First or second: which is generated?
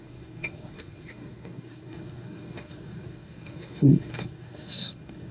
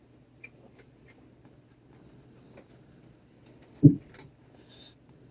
first